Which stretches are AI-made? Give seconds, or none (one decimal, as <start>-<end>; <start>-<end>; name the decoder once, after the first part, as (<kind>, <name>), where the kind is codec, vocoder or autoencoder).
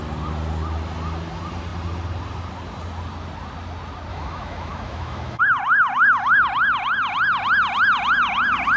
4.1-5.4 (autoencoder, DAC-VAE)